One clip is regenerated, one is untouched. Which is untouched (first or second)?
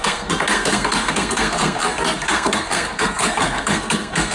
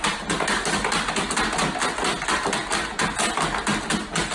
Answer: second